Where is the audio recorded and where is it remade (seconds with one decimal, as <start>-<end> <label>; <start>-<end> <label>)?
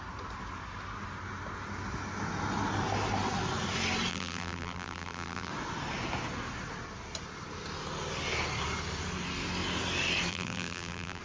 0.0-4.1 recorded; 4.1-5.5 remade; 5.5-10.3 recorded; 10.3-11.2 remade